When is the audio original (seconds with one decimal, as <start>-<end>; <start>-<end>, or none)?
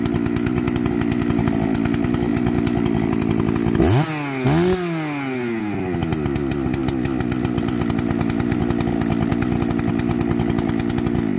0.0-6.8; 8.6-11.4